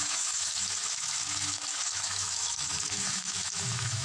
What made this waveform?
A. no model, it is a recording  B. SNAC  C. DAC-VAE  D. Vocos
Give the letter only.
C